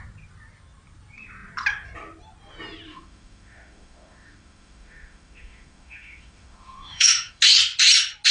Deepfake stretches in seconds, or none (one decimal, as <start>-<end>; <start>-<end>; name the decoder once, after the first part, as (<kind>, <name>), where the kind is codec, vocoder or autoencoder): 2.9-7.4 (autoencoder, DAC-VAE)